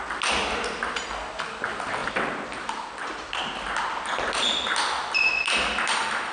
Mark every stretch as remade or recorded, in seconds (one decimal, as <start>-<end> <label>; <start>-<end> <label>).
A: 0.0-6.3 recorded